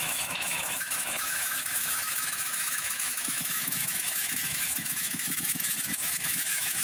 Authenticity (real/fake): fake